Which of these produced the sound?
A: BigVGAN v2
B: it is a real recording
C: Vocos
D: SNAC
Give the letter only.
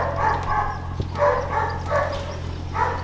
B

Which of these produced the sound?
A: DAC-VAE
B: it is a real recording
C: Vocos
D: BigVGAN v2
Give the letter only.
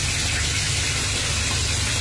B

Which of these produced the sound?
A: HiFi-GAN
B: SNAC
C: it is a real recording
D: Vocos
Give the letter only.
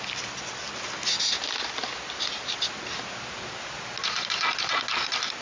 C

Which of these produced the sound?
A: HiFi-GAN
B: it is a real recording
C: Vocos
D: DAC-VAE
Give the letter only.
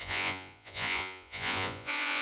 C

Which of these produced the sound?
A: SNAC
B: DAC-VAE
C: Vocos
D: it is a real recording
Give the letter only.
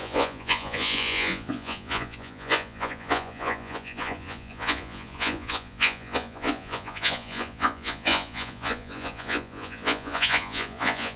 C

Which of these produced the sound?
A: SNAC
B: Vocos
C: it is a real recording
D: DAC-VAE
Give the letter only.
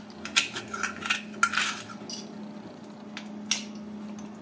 C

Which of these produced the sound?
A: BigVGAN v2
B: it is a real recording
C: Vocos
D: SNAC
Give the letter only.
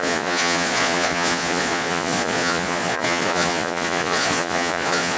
C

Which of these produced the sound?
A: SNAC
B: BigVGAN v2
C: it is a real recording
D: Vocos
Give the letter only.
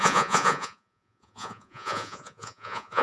D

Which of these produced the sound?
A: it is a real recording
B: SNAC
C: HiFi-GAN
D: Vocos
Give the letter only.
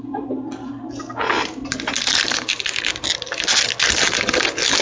A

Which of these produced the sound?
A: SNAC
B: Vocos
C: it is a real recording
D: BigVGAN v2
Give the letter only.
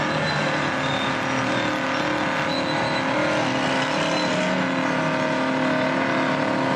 C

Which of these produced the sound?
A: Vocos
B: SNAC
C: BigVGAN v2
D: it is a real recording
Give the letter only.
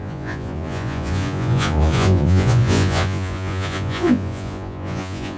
A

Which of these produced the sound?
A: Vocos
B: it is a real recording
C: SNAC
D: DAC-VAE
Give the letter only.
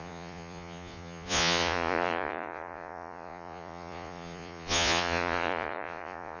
A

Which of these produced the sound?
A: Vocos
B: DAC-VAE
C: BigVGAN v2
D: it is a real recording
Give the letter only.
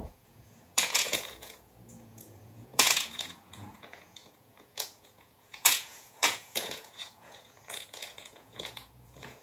A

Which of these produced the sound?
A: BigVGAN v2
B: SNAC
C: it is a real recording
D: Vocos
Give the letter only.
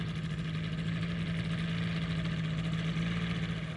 C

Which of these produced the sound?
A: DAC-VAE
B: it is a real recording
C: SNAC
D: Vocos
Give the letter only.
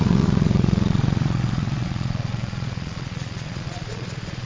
D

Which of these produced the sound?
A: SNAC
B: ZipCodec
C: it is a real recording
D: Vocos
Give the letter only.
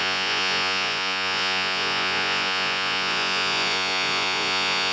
D